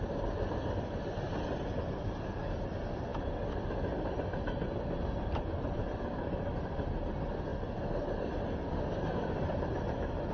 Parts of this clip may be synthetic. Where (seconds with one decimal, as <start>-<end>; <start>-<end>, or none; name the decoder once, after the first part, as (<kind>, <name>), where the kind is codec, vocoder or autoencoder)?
none